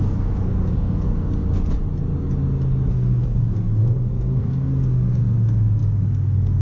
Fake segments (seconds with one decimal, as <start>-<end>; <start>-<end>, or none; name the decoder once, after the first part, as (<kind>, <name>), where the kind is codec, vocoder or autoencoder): 0.0-1.4 (codec, SNAC); 2.9-6.6